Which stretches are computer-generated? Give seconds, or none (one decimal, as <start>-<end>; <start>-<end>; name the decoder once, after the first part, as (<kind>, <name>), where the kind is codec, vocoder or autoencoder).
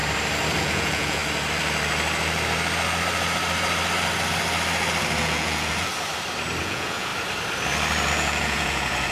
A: 0.6-1.2 (vocoder, Vocos); 5.2-5.9; 6.6-7.1; 8.1-9.1